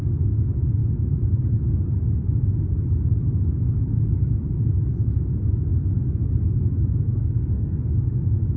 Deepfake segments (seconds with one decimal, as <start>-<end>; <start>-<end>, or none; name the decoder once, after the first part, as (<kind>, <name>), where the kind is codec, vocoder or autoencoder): 7.1-7.9 (codec, SNAC)